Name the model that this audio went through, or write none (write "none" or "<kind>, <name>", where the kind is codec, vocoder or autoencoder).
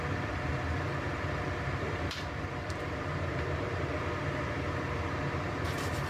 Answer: vocoder, BigVGAN v2